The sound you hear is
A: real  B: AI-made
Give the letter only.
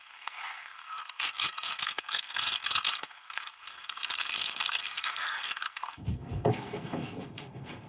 B